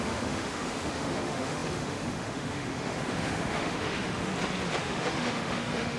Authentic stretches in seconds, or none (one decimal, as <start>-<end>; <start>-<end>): 4.3-4.8